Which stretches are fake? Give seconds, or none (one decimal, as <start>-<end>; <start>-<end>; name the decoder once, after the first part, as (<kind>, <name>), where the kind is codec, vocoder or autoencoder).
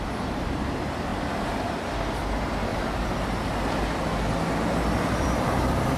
0.0-2.7 (vocoder, BigVGAN v2); 5.2-6.0